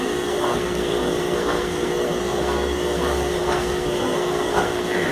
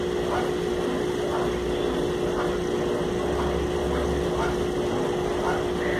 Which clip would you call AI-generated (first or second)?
first